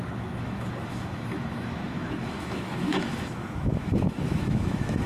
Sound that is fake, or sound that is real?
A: fake